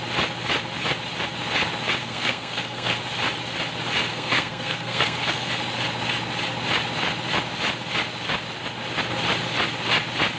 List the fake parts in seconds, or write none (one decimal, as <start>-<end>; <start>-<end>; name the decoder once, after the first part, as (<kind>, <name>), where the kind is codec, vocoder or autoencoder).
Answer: 2.0-3.0 (codec, SNAC); 4.1-5.5